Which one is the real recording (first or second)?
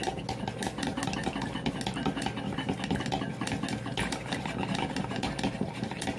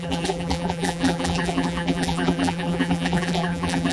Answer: first